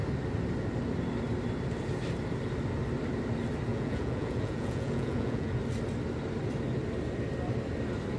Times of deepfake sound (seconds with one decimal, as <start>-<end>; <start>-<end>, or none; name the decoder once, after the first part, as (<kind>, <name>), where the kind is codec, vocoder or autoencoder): 3.7-5.6 (vocoder, Vocos)